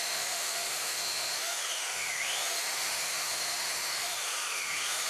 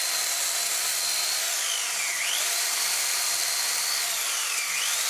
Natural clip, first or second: second